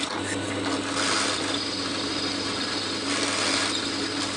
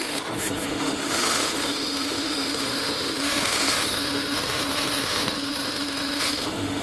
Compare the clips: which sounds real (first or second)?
first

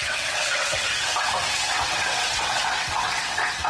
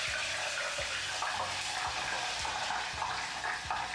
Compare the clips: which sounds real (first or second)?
second